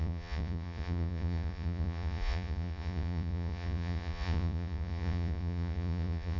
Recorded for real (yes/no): no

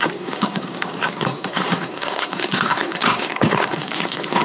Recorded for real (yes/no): no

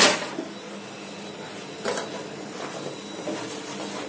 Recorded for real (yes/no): yes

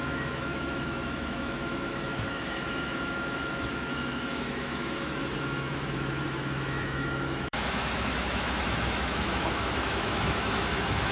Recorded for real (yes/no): no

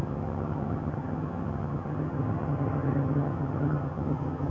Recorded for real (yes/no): no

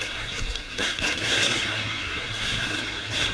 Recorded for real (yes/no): no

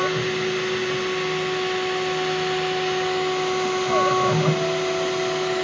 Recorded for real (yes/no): yes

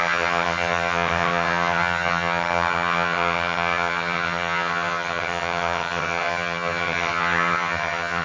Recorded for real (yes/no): no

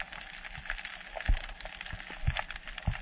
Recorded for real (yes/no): yes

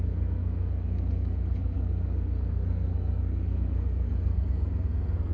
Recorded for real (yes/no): no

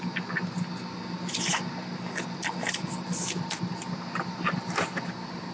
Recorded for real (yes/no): yes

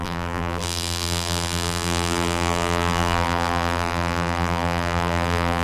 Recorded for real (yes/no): no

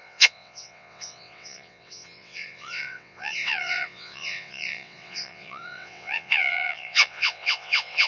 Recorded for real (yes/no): no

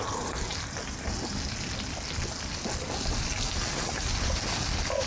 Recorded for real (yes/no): yes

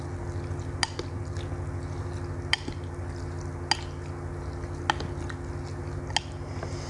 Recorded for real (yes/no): yes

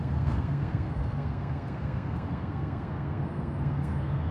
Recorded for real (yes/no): no